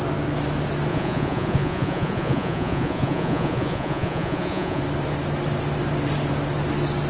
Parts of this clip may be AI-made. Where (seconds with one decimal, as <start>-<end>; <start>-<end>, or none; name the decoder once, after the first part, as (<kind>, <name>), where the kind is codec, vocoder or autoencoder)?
0.9-4.8 (vocoder, Vocos)